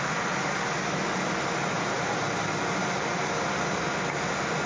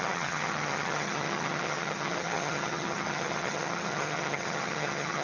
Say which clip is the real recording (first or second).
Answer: first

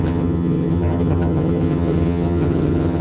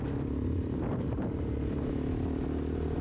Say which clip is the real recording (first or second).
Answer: second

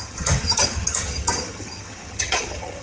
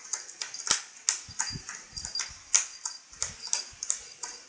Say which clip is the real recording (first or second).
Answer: second